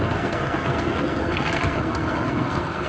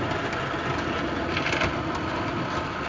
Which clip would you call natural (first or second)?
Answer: second